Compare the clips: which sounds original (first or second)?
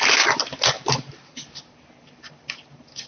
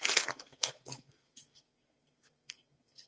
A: first